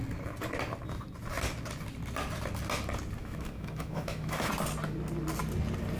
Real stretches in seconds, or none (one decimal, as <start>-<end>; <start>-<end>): 0.0-3.2; 4.5-6.0

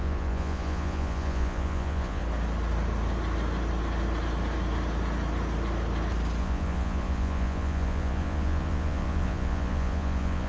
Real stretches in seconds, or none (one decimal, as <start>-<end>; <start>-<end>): 2.2-6.4